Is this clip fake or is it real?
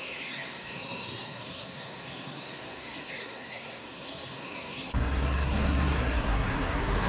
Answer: fake